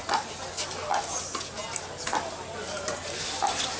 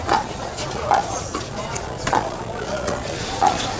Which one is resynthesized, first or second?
second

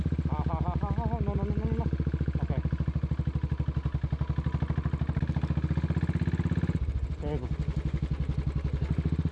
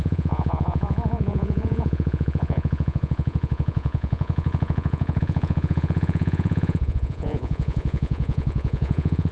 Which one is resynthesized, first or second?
second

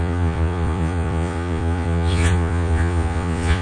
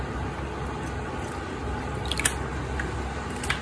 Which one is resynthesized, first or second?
first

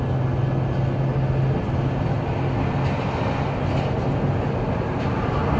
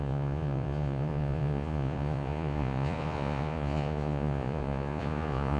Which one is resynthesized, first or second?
second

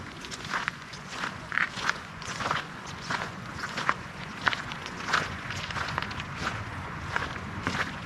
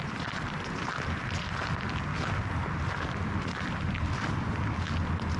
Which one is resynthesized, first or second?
first